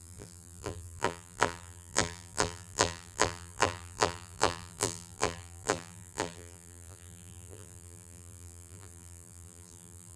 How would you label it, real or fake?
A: fake